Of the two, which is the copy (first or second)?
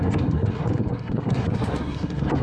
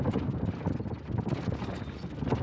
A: first